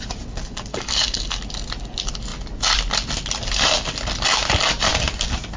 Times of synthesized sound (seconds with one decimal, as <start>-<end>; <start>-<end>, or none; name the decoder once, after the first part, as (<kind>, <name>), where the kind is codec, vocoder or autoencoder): 0.7-1.4 (codec, DAC)